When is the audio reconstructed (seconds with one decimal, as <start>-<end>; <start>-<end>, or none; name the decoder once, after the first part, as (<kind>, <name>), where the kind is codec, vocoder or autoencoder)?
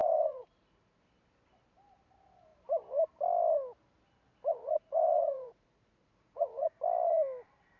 0.0-1.0 (vocoder, Vocos); 4.5-6.8